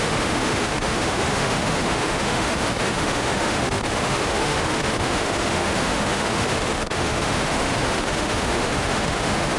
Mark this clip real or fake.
fake